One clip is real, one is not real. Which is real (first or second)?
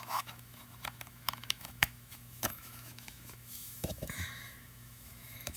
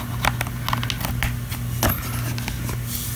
second